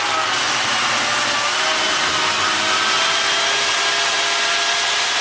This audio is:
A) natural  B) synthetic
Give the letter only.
A